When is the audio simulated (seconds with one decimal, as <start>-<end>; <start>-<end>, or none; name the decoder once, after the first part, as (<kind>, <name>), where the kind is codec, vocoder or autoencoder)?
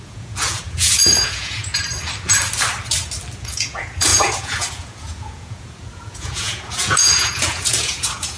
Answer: 0.0-1.7 (vocoder, Vocos); 3.4-8.4